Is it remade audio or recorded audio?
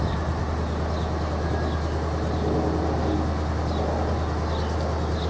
recorded